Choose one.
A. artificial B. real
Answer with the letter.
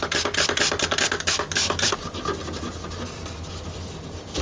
B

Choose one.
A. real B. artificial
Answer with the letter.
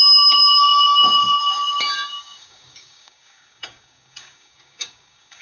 B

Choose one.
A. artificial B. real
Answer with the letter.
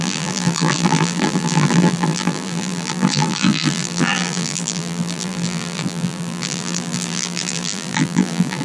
A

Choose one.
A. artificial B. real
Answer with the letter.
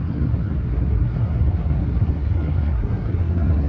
A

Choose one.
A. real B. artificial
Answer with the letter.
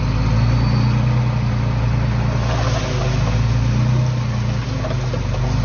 A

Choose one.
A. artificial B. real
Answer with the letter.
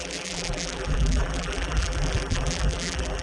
A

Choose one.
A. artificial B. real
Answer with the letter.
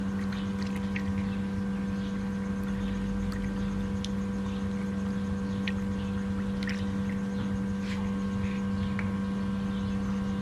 B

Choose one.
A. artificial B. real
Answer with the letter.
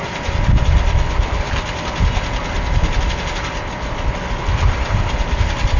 B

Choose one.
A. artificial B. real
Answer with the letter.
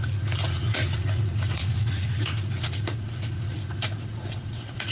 A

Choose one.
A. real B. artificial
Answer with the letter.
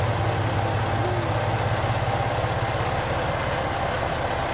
A